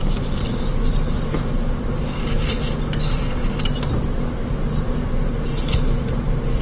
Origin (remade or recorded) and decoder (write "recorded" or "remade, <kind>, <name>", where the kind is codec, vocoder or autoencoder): recorded